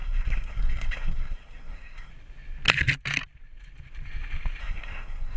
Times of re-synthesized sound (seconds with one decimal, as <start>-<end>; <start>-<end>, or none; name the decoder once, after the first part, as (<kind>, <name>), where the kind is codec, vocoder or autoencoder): 0.0-2.1 (codec, SNAC); 4.6-5.4